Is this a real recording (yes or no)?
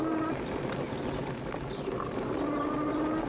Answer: yes